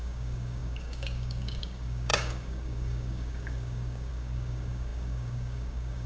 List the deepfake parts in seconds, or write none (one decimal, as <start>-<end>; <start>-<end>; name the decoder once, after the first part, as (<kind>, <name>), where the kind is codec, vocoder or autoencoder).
0.0-6.1 (codec, DAC)